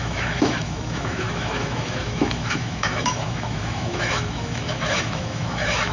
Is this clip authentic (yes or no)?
no